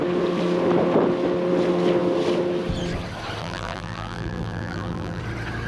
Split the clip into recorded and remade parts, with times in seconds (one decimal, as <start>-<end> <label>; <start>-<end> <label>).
0.0-3.4 recorded; 3.4-5.2 remade; 5.2-5.7 recorded